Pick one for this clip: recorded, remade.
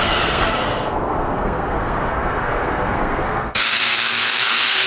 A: remade